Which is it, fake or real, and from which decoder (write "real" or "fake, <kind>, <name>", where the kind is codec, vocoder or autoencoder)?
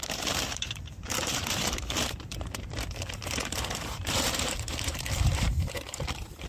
fake, vocoder, BigVGAN v2